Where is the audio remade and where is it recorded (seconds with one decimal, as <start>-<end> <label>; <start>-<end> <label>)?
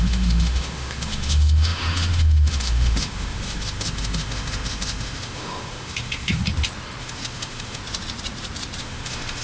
0.0-6.4 remade; 6.4-7.0 recorded; 7.0-7.8 remade; 7.8-8.8 recorded; 8.8-9.4 remade